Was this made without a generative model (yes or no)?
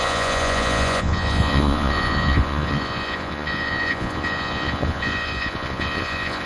no